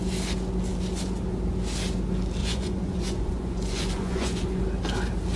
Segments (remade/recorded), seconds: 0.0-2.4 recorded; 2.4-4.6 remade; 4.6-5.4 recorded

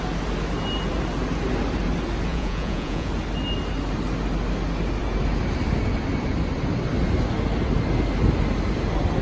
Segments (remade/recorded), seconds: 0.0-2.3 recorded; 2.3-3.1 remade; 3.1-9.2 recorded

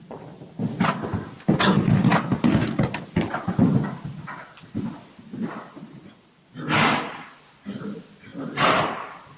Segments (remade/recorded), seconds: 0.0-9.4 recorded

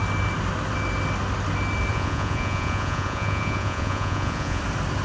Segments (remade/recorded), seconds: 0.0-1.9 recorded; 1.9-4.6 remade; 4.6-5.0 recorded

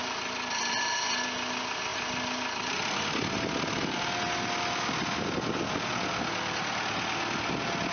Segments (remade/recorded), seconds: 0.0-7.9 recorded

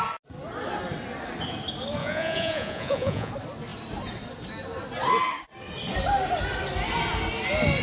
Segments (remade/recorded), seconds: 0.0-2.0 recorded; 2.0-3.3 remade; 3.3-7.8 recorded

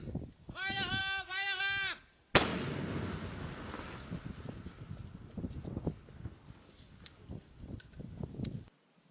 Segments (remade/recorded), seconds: 0.0-9.1 recorded